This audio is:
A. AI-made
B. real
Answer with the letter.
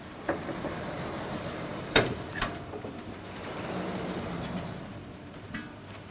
A